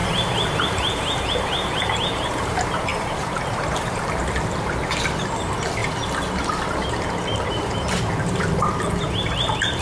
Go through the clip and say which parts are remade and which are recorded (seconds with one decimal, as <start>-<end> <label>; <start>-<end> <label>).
0.0-4.2 remade; 4.2-5.2 recorded; 5.2-5.8 remade; 5.8-6.4 recorded; 6.4-9.8 remade